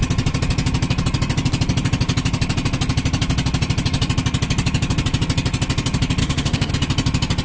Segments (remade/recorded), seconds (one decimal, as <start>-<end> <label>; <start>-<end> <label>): 0.0-6.2 recorded; 6.2-6.7 remade; 6.7-7.4 recorded